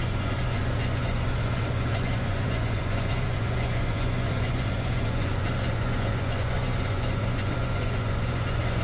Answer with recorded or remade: remade